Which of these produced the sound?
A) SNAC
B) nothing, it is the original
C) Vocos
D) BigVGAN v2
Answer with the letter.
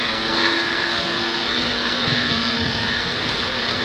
A